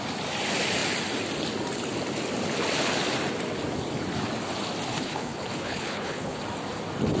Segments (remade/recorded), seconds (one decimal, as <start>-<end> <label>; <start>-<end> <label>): 0.0-4.9 recorded; 4.9-6.4 remade; 6.4-7.2 recorded